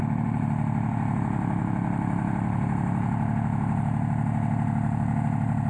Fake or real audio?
real